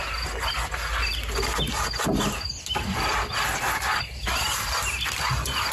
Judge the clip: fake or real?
real